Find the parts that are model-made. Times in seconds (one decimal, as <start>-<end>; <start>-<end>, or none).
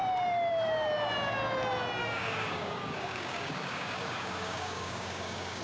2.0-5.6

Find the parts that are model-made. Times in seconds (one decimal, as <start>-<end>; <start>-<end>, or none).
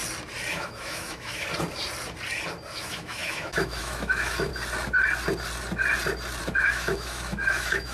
0.5-1.5; 2.8-4.5; 6.4-7.9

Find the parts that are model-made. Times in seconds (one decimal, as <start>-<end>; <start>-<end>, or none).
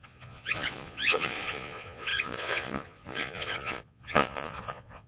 0.0-5.1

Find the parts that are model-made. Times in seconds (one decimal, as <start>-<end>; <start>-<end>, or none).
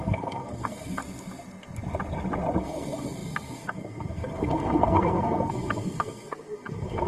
0.0-1.0; 2.6-7.1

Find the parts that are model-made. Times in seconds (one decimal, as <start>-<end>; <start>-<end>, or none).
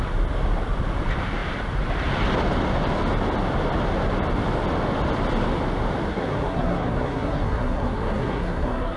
6.1-9.0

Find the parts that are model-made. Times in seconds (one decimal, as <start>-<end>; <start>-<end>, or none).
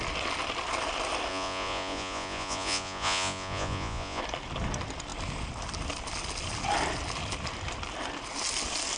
1.3-4.2